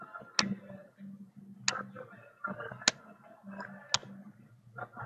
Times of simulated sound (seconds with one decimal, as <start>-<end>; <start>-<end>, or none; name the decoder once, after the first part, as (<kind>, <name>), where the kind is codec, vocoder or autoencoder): none